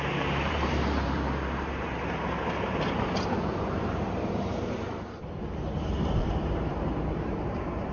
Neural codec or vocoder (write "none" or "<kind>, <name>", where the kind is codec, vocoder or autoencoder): vocoder, BigVGAN v2